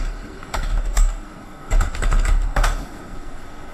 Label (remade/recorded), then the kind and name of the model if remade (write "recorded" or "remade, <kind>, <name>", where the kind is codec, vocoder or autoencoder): remade, codec, SNAC